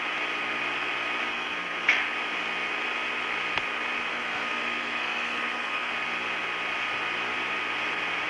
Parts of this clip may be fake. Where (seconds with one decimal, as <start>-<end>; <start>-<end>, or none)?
1.3-1.9; 4.1-5.9